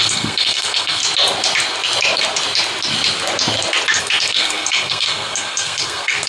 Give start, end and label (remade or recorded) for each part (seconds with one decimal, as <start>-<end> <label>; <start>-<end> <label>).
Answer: 0.0-1.0 remade; 1.0-4.0 recorded; 4.0-6.3 remade